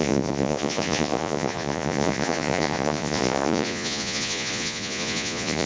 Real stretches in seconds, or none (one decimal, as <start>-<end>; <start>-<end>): none